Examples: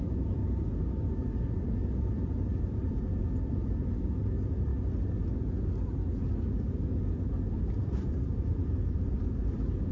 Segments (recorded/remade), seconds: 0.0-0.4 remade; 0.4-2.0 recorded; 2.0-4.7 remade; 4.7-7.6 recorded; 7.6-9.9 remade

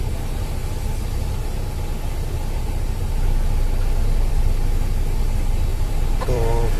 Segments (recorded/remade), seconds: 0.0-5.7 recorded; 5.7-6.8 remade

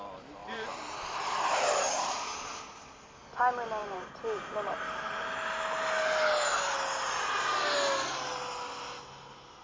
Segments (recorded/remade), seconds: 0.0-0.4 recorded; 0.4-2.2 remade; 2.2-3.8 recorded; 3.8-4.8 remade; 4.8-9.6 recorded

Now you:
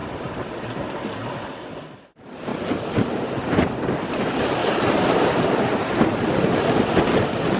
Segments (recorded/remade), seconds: 0.0-0.6 remade; 0.6-2.5 recorded; 2.5-3.8 remade; 3.8-4.6 recorded; 4.6-6.2 remade; 6.2-7.6 recorded